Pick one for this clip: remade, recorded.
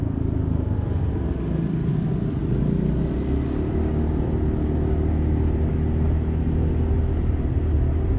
recorded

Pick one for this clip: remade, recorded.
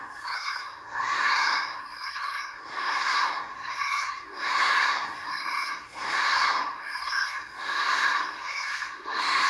remade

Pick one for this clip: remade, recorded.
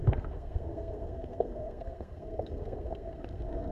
remade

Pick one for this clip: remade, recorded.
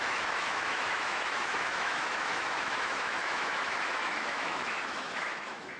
remade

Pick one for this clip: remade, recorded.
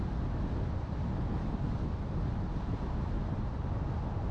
recorded